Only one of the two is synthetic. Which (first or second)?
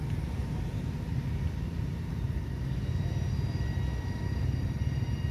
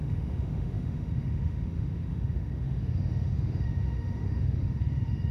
second